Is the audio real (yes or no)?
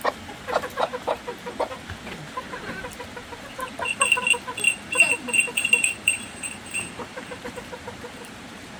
no